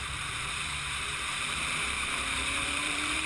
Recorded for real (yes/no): no